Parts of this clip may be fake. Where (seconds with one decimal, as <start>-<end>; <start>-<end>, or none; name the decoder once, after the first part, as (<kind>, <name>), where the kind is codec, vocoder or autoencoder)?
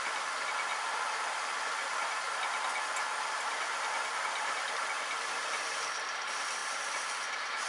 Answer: none